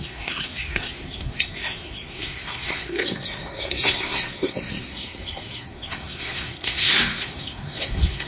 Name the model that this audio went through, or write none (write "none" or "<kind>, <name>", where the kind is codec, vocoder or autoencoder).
codec, SNAC